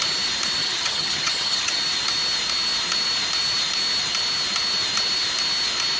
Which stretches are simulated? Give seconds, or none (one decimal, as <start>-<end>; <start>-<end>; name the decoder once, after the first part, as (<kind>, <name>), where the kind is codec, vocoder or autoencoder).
0.6-1.8 (vocoder, HiFi-GAN)